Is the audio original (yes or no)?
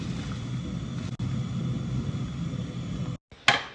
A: yes